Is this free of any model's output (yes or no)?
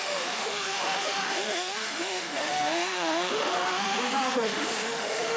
no